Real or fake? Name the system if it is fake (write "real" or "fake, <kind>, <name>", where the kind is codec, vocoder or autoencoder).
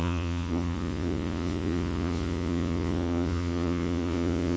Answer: fake, vocoder, Vocos